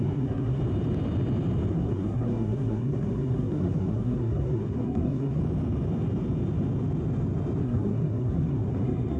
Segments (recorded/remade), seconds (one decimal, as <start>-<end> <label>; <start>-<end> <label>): 0.0-0.6 remade; 0.6-1.7 recorded; 1.7-5.4 remade; 5.4-7.6 recorded; 7.6-9.2 remade